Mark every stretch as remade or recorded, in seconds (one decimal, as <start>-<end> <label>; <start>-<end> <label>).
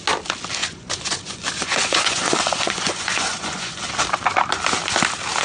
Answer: 0.0-0.6 recorded; 0.6-3.8 remade; 3.8-5.4 recorded